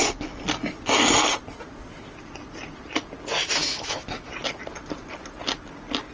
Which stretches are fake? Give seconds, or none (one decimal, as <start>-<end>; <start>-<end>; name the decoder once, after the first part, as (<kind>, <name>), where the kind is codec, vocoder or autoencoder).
3.4-4.3 (autoencoder, DAC-VAE)